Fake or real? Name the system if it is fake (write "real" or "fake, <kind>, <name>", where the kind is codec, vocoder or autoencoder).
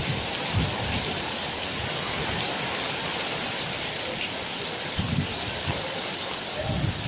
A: fake, vocoder, BigVGAN v2